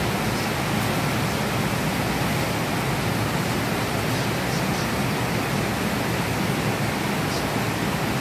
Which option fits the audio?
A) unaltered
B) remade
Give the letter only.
A